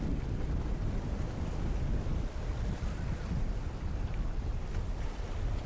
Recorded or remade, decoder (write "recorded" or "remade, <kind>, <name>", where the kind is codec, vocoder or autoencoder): recorded